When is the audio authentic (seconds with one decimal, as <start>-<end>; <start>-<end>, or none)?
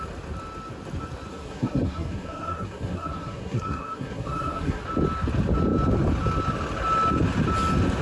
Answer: 0.0-1.3; 4.8-8.0